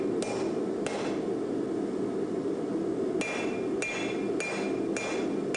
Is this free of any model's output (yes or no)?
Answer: yes